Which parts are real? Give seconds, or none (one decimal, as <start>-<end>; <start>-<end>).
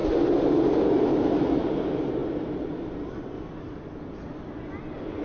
0.0-5.2